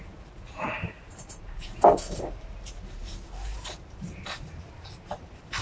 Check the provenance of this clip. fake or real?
fake